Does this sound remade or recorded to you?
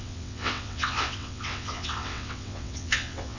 remade